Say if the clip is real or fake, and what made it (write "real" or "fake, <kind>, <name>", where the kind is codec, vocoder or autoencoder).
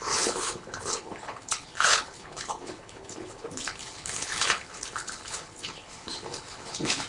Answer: fake, codec, HILCodec